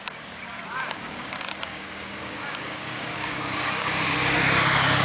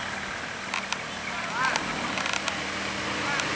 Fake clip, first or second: first